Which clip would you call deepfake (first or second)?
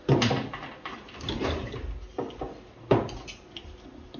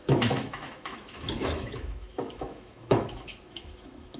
second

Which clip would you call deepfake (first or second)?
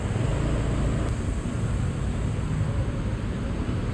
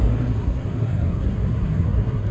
second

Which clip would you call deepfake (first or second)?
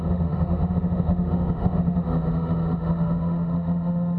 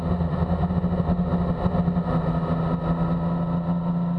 first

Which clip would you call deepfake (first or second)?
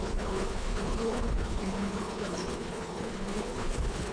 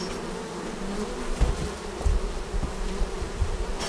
first